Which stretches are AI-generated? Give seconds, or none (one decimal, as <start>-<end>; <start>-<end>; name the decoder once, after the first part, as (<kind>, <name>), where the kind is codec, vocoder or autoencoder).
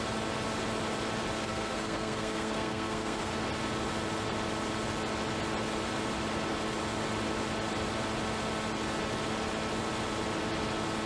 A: 1.4-3.3 (codec, SNAC)